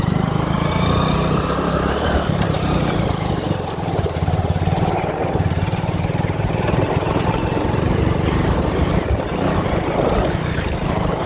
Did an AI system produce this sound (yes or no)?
yes